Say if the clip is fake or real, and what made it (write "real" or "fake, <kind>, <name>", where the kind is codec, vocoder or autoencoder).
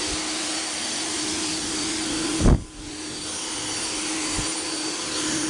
real